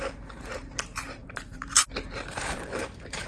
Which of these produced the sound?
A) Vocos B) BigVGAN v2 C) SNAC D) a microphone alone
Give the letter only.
B